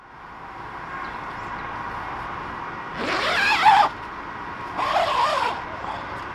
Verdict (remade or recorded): recorded